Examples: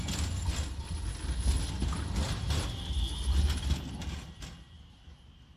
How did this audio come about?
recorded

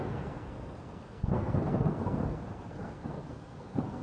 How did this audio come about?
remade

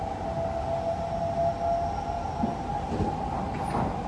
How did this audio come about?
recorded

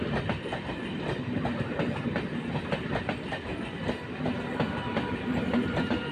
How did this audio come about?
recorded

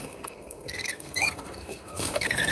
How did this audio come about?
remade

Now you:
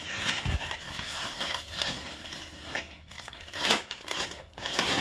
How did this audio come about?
remade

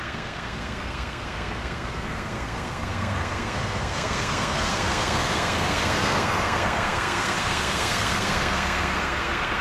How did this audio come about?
remade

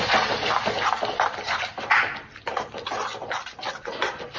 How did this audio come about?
recorded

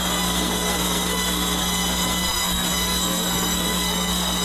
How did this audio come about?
remade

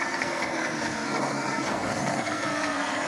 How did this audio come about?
remade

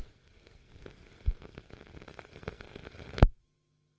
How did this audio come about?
remade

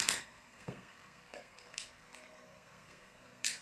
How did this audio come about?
remade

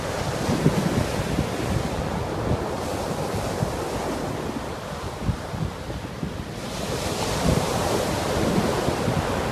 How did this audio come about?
recorded